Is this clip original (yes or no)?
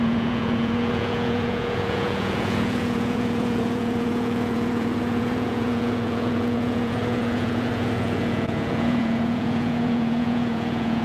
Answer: no